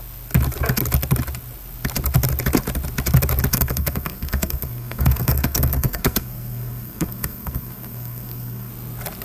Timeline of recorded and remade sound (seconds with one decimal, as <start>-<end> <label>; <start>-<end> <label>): 0.0-3.5 recorded; 3.5-8.7 remade; 8.7-9.2 recorded